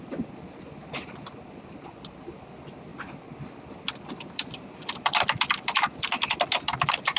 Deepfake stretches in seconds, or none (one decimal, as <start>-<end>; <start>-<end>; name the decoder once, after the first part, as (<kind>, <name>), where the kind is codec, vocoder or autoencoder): none